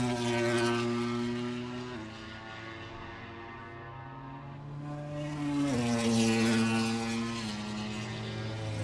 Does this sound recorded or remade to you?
recorded